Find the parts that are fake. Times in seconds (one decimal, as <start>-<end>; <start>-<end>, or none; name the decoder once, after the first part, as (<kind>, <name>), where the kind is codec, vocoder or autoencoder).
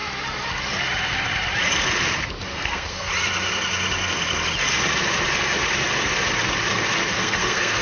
2.5-3.1 (codec, SNAC); 7.1-7.8